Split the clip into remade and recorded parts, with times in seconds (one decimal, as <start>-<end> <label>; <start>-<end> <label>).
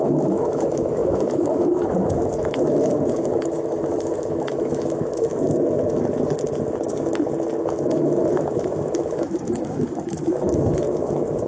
0.0-5.3 remade; 5.3-7.6 recorded; 7.6-11.5 remade